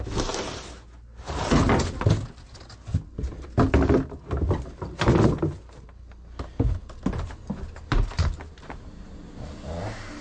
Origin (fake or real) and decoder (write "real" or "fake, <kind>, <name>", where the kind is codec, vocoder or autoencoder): real